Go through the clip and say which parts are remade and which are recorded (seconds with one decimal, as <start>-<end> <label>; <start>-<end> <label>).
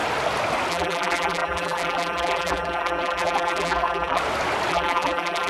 0.0-0.7 recorded; 0.7-4.2 remade; 4.2-4.7 recorded; 4.7-5.5 remade